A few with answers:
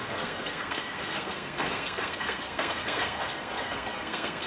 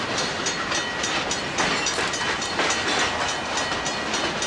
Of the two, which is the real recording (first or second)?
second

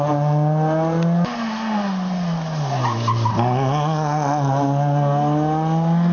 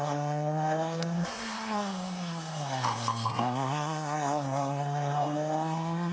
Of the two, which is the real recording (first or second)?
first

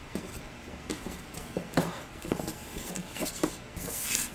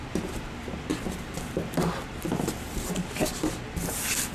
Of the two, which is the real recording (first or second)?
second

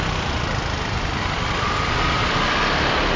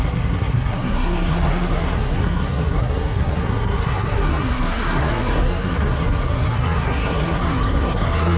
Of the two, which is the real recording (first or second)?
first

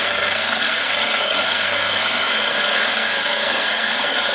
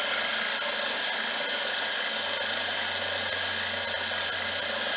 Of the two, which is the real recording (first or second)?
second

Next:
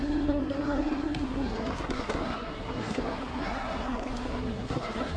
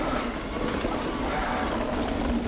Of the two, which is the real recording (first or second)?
second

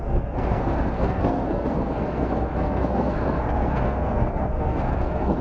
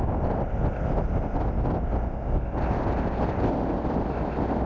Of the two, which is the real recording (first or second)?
second